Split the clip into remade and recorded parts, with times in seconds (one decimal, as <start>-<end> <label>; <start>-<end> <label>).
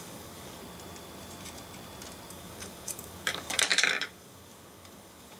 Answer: 0.0-0.6 remade; 0.6-2.3 recorded; 2.3-5.4 remade